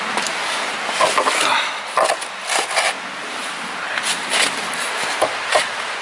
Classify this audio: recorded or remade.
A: recorded